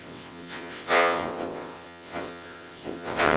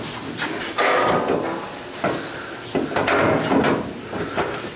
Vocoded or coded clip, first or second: first